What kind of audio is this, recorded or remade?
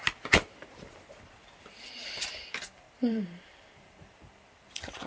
remade